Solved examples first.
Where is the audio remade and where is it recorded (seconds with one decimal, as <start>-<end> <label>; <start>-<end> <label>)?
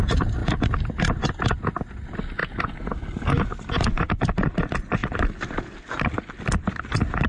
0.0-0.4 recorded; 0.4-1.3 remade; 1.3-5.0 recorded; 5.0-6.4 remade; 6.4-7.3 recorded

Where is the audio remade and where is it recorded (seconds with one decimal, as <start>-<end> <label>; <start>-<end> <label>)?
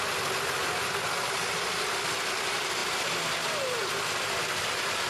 0.0-5.1 recorded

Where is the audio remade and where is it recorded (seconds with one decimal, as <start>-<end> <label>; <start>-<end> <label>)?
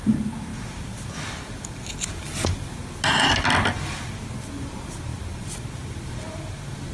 0.0-0.5 remade; 0.5-4.6 recorded; 4.6-5.1 remade; 5.1-6.9 recorded